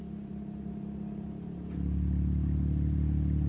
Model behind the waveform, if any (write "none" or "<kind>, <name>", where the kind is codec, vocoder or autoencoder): none